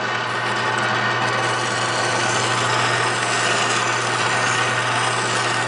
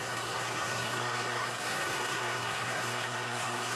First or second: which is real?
first